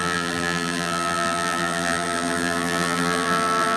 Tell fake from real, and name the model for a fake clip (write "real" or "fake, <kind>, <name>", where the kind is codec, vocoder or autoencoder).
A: fake, vocoder, BigVGAN v2